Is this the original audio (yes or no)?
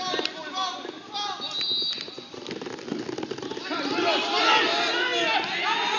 yes